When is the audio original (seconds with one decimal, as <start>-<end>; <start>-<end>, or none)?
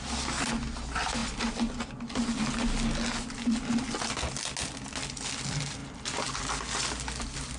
0.0-7.6